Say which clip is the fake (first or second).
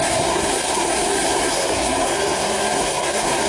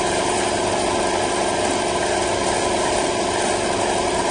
first